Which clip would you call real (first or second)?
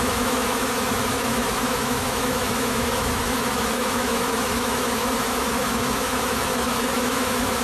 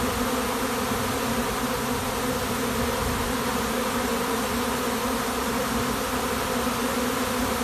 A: second